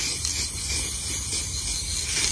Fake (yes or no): no